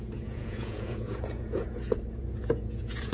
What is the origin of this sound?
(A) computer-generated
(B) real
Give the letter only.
A